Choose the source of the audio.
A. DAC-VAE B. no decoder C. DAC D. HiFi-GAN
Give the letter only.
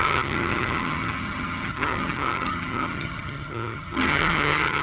D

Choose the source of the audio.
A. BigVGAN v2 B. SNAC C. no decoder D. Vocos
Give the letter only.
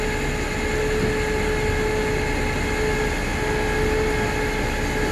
C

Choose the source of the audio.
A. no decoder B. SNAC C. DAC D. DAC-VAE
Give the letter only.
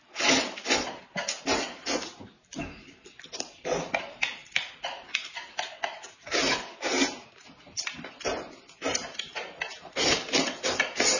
A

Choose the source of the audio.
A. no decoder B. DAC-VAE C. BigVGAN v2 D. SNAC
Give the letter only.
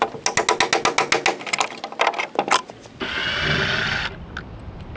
A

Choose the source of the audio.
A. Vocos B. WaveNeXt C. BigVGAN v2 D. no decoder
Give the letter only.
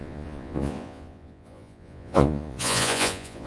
A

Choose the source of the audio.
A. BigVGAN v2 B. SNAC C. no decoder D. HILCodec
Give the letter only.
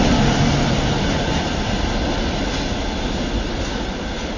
C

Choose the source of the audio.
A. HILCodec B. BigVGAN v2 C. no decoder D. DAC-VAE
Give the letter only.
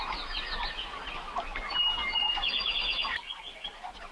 C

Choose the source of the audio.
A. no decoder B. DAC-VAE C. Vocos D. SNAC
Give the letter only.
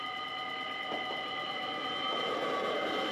A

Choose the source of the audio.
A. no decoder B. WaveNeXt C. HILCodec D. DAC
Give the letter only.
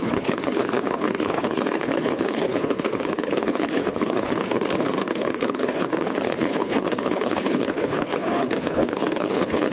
C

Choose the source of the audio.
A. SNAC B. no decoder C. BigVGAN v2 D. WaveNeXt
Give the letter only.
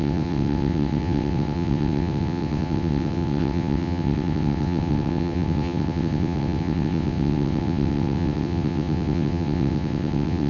D